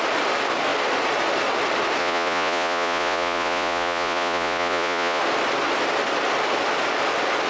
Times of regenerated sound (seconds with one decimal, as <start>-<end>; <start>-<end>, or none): 2.0-5.2